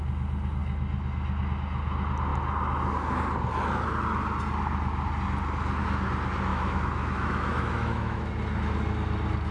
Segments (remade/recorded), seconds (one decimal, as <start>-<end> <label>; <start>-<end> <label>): 0.0-6.5 recorded; 6.5-8.3 remade; 8.3-9.5 recorded